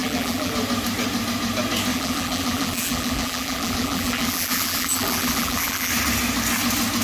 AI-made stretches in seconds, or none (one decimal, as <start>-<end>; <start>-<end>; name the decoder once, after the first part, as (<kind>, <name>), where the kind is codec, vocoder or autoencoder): 0.0-0.5 (vocoder, BigVGAN v2); 1.9-5.9